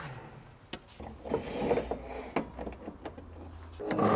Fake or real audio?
real